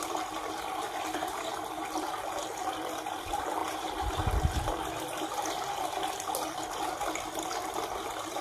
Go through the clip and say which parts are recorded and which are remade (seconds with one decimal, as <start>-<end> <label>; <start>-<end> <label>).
0.0-1.5 remade; 1.5-2.6 recorded; 2.6-3.6 remade; 3.6-7.9 recorded; 7.9-8.4 remade